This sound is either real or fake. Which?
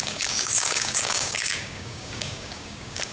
fake